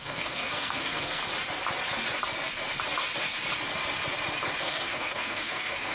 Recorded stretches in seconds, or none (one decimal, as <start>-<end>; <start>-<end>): 1.2-4.7